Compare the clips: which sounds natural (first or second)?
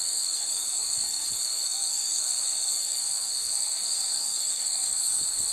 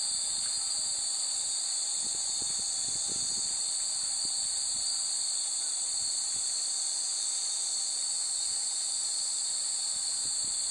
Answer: second